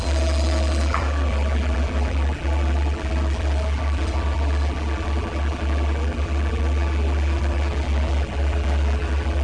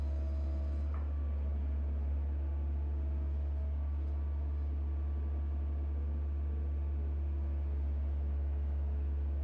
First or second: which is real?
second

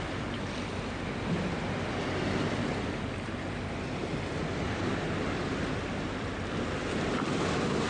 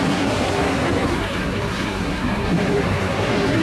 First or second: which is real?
first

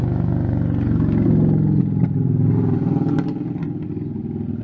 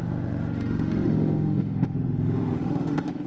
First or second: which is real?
first